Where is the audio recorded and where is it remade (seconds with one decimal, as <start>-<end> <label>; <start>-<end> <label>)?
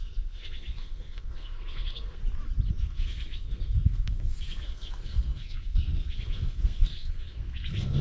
0.0-2.2 remade; 2.2-2.7 recorded; 2.7-8.0 remade